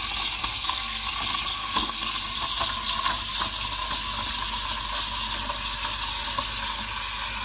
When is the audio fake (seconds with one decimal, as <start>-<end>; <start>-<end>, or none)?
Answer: 0.4-1.1; 1.5-2.2

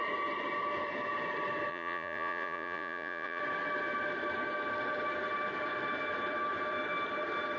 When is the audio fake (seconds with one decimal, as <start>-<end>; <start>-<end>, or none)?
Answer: 1.7-3.4

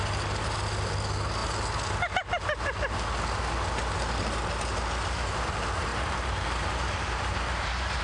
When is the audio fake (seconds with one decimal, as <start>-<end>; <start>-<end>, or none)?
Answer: 5.9-8.0